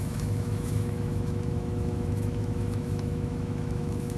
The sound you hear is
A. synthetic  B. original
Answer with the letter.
A